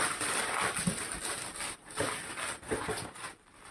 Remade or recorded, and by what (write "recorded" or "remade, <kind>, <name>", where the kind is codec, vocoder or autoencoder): recorded